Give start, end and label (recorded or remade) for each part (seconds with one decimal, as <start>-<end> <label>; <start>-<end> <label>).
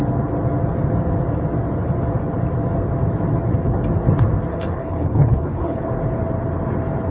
0.0-4.5 recorded; 4.5-5.9 remade; 5.9-7.1 recorded